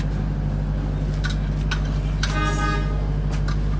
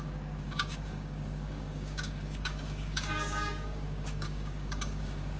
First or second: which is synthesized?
second